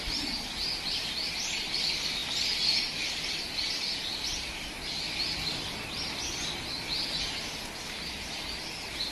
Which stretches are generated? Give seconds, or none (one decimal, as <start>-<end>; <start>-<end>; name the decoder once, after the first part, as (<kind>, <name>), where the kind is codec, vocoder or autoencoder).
none